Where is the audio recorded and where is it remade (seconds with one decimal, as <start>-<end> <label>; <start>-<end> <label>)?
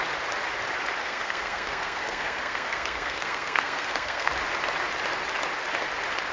0.0-1.0 recorded; 1.0-4.3 remade; 4.3-6.3 recorded